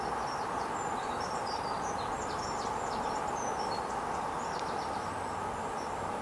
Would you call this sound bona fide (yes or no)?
yes